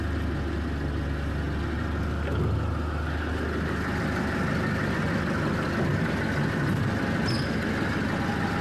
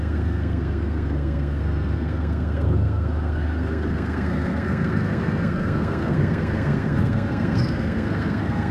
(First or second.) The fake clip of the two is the second